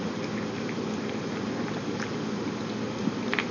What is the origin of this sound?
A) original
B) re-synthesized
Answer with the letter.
A